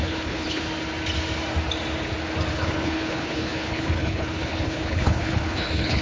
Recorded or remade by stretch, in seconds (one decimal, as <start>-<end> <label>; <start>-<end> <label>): 0.0-0.6 remade; 0.6-2.5 recorded; 2.5-6.0 remade